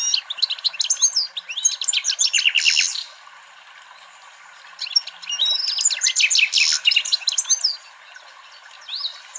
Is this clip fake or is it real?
real